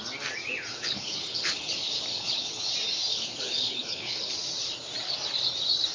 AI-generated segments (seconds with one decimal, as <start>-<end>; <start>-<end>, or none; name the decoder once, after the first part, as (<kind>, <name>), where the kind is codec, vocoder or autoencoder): 0.7-1.7 (codec, HILCodec); 2.1-2.7; 3.1-4.3